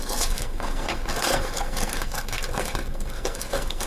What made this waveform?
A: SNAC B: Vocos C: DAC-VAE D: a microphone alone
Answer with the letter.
A